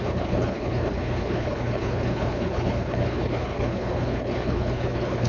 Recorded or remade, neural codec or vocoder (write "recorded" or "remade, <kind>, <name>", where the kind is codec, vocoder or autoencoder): remade, codec, HILCodec